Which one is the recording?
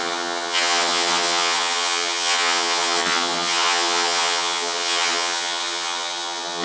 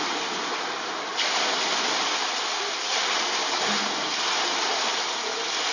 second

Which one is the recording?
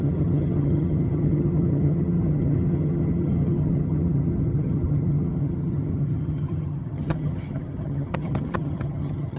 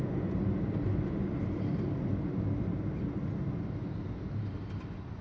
second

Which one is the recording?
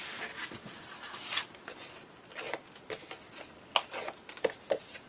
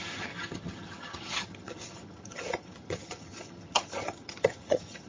first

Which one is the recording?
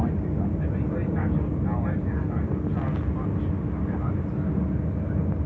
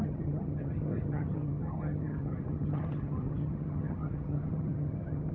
first